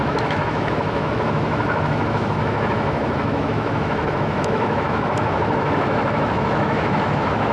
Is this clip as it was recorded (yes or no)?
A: no